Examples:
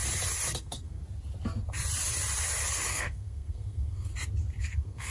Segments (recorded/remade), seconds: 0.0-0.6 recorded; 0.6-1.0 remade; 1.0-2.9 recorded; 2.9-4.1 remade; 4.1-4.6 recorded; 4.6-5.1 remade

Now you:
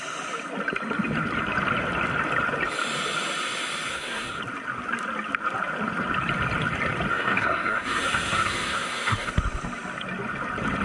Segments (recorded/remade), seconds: 0.0-3.9 recorded; 3.9-4.4 remade; 4.4-7.1 recorded; 7.1-9.3 remade; 9.3-10.8 recorded

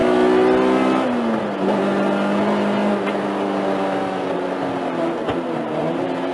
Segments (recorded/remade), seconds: 0.0-6.3 recorded

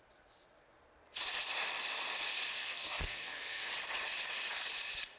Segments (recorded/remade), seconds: 0.0-2.6 recorded; 2.6-3.7 remade; 3.7-5.2 recorded

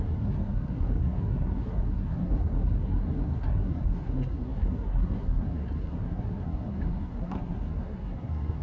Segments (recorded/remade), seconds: 0.0-8.6 remade

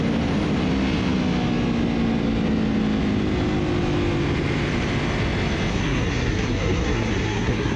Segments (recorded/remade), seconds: 0.0-5.7 recorded; 5.7-7.8 remade

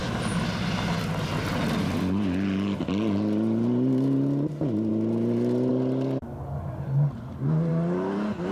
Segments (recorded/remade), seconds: 0.0-8.5 recorded

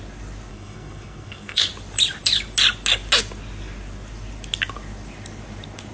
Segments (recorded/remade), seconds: 0.0-0.5 recorded; 0.5-1.7 remade; 1.7-5.9 recorded